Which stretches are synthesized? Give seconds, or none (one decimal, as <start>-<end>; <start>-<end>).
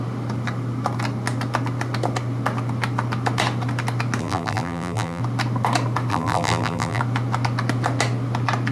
4.2-5.2; 6.1-7.0